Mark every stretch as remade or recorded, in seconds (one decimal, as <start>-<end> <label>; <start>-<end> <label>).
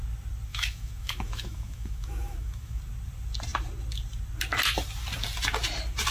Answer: 0.0-0.5 recorded; 0.5-2.8 remade; 2.8-6.1 recorded